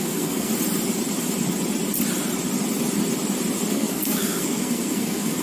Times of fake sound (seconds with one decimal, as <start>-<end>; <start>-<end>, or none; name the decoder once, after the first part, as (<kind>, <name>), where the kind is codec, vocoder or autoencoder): 0.0-0.5 (codec, SNAC); 3.7-5.4